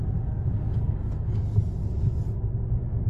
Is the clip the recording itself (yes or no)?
yes